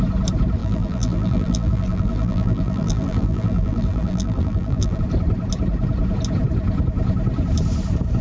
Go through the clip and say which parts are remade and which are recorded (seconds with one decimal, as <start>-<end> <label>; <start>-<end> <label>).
0.0-0.6 recorded; 0.6-5.0 remade; 5.0-8.2 recorded